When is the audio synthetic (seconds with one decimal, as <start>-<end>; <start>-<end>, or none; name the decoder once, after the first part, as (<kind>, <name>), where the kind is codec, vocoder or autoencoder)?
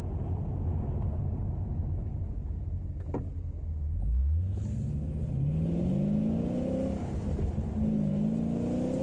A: none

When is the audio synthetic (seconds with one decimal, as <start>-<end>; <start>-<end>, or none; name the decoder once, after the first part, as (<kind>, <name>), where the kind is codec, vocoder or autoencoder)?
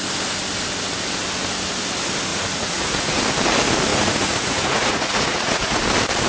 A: 2.3-3.2 (vocoder, Vocos); 3.9-5.8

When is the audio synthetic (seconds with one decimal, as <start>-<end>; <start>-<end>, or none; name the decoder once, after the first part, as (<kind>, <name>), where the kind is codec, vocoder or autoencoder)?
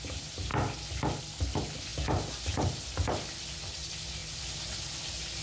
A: none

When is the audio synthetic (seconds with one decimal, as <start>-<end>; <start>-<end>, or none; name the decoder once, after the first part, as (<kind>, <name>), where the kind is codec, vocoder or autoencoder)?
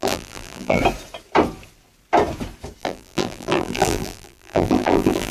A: 0.0-0.8 (vocoder, BigVGAN v2); 2.8-5.3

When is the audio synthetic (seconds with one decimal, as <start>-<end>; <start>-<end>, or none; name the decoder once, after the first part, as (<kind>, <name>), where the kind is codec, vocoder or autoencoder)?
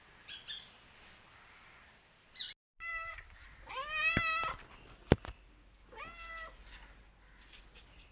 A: none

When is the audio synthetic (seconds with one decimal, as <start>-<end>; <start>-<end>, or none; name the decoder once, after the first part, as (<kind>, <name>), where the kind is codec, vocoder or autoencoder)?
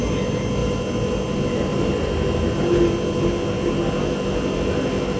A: none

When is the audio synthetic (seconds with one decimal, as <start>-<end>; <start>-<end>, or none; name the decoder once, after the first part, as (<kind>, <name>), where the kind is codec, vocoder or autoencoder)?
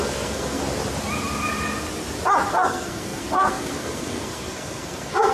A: 0.0-0.6 (codec, SNAC); 2.5-5.3